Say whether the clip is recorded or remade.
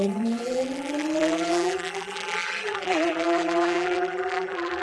remade